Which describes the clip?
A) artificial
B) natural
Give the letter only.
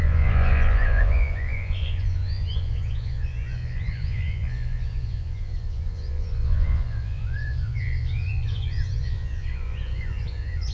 A